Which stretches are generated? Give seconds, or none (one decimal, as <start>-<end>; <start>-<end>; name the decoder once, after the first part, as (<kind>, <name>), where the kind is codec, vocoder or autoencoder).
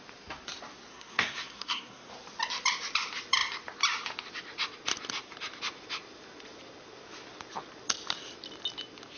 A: 0.9-2.1 (codec, SNAC)